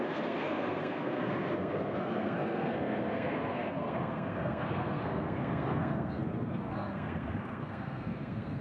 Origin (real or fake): fake